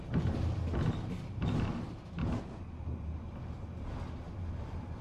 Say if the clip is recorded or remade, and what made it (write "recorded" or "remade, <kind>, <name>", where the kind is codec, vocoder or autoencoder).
recorded